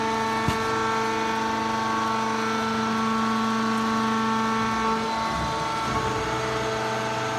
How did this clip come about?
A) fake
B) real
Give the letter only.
B